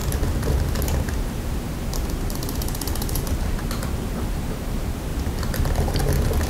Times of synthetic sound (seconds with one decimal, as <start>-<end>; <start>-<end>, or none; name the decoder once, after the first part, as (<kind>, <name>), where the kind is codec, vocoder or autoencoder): none